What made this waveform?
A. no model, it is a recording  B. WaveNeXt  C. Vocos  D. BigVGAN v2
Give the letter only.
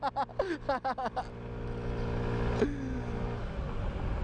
A